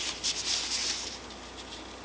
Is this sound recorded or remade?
recorded